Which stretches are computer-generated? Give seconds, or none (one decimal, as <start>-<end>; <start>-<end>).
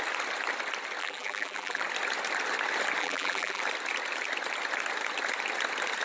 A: 1.0-1.8; 3.0-3.6